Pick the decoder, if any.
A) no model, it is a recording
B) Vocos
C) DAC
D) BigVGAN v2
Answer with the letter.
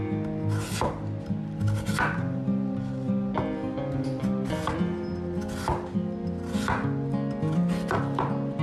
A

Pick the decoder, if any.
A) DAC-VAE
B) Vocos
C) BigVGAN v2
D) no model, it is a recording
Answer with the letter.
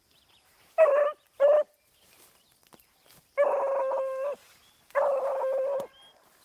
D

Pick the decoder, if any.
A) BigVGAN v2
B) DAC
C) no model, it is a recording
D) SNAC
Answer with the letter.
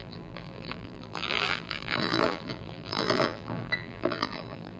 A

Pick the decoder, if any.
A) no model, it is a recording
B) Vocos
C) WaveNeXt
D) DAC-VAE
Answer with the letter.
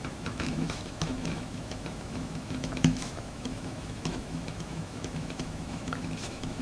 D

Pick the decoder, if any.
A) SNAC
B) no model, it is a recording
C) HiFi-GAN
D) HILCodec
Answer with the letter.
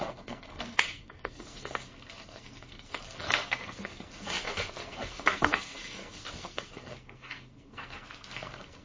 A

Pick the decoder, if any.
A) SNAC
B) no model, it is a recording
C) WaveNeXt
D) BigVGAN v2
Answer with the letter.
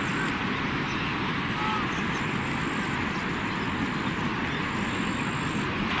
B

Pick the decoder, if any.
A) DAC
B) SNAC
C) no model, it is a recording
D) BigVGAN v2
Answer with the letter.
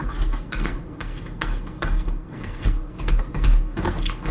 B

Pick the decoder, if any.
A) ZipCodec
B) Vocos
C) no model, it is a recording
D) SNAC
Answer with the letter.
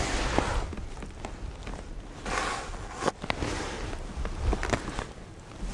C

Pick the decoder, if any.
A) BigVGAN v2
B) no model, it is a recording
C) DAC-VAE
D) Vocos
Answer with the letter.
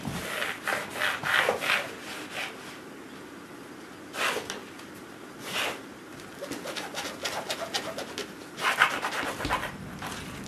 B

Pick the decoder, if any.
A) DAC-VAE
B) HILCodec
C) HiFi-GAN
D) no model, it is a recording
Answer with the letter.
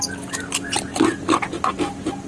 D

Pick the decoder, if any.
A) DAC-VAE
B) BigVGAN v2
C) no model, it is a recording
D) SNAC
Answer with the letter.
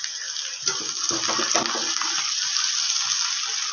C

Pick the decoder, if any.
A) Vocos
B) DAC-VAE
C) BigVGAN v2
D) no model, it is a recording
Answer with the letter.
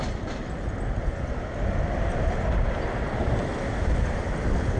D